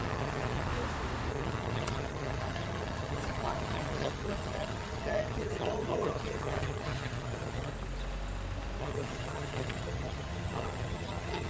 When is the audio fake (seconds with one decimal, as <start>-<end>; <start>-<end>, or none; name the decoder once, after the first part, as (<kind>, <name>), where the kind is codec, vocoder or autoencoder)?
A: 0.0-0.7 (vocoder, HiFi-GAN); 1.3-7.7; 8.8-11.5